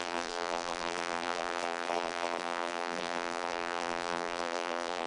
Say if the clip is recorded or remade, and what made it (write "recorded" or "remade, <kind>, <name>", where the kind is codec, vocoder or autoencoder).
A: remade, vocoder, BigVGAN v2